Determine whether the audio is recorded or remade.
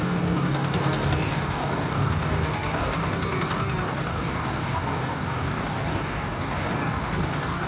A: remade